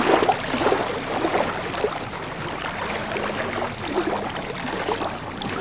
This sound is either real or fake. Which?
real